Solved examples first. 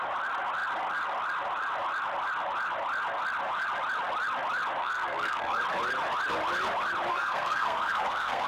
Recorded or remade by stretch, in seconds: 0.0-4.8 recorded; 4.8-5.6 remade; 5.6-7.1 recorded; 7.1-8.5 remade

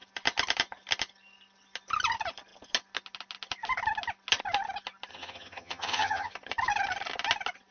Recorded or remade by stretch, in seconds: 0.0-5.1 recorded; 5.1-6.3 remade; 6.3-7.7 recorded

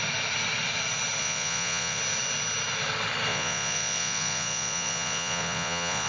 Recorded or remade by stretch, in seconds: 0.0-1.2 recorded; 1.2-2.0 remade; 2.0-3.3 recorded; 3.3-6.1 remade

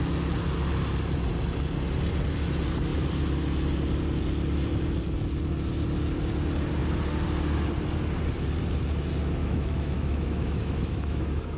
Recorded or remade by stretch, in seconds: 0.0-9.4 recorded; 9.4-11.6 remade